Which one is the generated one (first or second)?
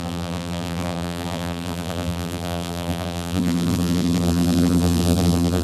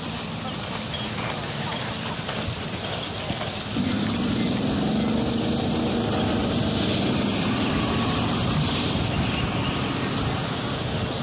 first